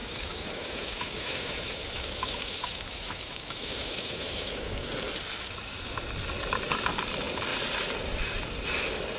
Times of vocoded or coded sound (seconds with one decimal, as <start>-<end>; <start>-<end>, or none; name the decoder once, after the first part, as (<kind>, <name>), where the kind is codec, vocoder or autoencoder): 0.0-4.9 (autoencoder, DAC-VAE)